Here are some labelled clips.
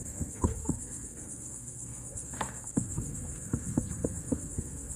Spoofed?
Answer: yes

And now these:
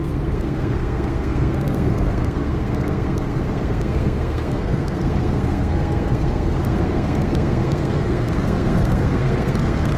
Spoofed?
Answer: yes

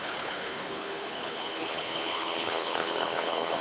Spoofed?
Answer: yes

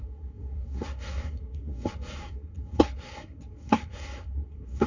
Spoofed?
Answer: yes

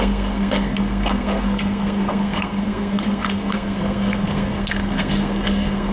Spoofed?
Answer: yes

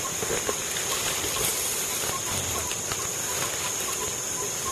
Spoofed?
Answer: no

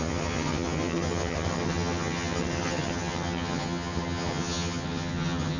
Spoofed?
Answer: yes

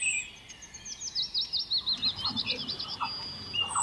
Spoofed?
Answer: no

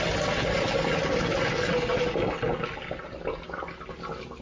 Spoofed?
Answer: no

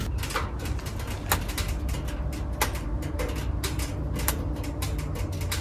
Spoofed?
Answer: no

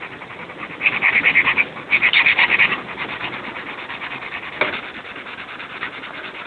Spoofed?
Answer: no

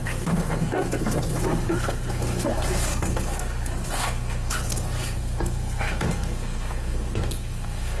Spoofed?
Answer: yes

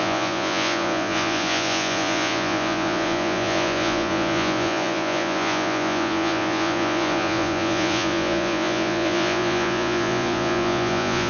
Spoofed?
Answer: yes